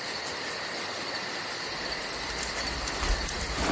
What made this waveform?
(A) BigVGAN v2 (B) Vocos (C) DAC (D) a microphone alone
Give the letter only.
D